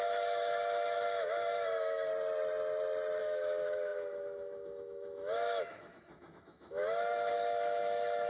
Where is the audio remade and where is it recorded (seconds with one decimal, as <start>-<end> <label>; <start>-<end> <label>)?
0.0-2.1 remade; 2.1-3.2 recorded; 3.2-8.3 remade